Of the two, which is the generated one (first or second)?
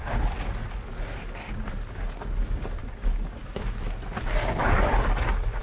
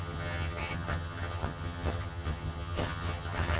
second